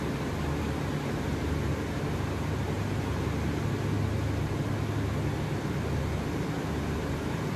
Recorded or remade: recorded